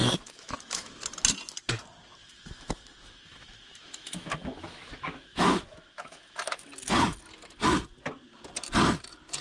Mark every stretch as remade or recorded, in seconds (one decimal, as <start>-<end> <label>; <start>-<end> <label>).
0.0-1.0 remade; 1.0-2.2 recorded; 2.2-6.6 remade; 6.6-9.4 recorded

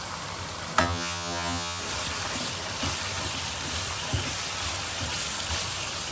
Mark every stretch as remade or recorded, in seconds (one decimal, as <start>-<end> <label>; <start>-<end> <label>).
0.0-0.8 recorded; 0.8-1.8 remade; 1.8-6.1 recorded

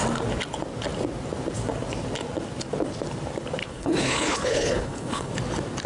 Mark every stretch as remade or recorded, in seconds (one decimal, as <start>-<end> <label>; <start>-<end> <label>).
0.0-3.6 recorded; 3.6-5.3 remade; 5.3-5.9 recorded

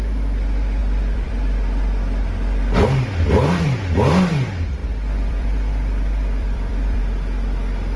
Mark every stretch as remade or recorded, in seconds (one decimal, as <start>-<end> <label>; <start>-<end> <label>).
0.0-0.8 recorded; 0.8-1.3 remade; 1.3-4.8 recorded; 4.8-7.0 remade; 7.0-8.0 recorded

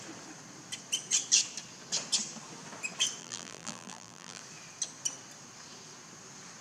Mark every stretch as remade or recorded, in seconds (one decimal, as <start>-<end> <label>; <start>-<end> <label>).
0.0-3.2 recorded; 3.2-4.4 remade; 4.4-6.6 recorded

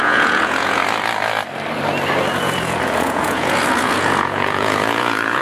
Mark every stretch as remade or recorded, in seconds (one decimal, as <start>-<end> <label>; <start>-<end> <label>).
0.0-0.8 remade; 0.8-2.3 recorded; 2.3-5.4 remade

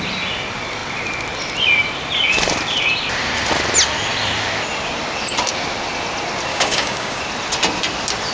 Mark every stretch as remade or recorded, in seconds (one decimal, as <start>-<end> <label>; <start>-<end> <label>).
0.0-6.5 recorded; 6.5-7.2 remade; 7.2-8.3 recorded